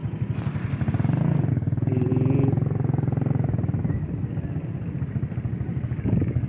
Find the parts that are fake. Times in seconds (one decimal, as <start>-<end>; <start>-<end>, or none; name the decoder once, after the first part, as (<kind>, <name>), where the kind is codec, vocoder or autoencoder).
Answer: 1.5-2.1 (codec, DAC); 6.0-6.5